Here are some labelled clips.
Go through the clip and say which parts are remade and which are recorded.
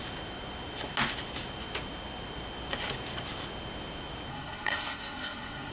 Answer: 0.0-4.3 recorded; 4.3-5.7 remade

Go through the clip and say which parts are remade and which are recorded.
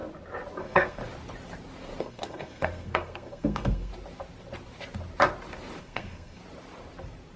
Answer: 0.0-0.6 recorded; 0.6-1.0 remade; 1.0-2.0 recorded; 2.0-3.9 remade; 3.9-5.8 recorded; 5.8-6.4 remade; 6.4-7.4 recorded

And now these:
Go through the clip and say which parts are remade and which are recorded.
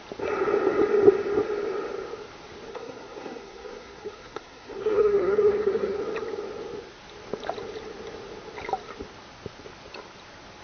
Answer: 0.0-2.7 recorded; 2.7-6.0 remade; 6.0-10.6 recorded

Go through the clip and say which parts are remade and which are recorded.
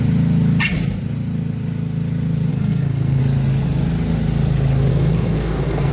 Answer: 0.0-2.5 recorded; 2.5-3.2 remade; 3.2-4.9 recorded; 4.9-5.9 remade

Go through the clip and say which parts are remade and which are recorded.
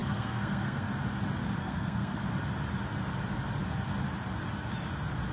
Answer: 0.0-0.9 remade; 0.9-1.6 recorded; 1.6-2.2 remade; 2.2-5.3 recorded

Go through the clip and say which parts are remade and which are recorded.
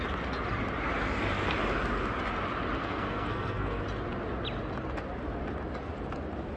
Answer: 0.0-2.8 recorded; 2.8-3.8 remade; 3.8-6.6 recorded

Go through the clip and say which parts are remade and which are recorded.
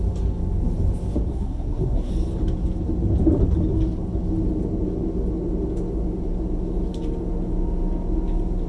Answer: 0.0-1.3 recorded; 1.3-2.1 remade; 2.1-8.7 recorded